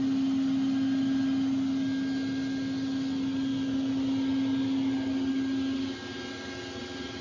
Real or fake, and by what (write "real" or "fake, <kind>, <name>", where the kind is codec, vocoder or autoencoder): real